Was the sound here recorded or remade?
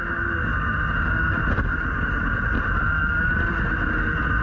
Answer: recorded